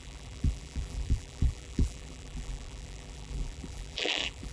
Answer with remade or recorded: remade